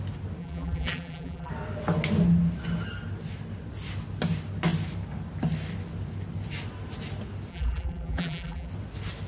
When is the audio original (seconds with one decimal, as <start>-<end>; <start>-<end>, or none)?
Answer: 0.0-0.4; 1.5-7.5; 8.7-9.3